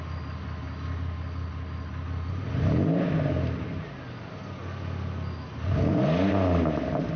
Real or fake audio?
real